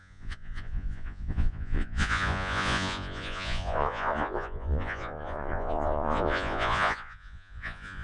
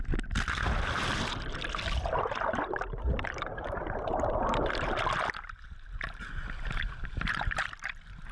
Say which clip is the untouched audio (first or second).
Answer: second